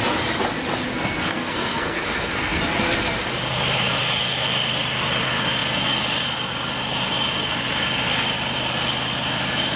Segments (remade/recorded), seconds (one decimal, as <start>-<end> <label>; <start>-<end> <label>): 0.0-0.9 recorded; 0.9-2.6 remade; 2.6-9.8 recorded